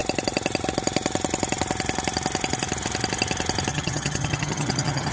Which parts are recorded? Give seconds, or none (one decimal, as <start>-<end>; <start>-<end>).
0.0-3.7